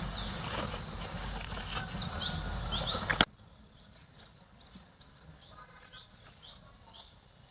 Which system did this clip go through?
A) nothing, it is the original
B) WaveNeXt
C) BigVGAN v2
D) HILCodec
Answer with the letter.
A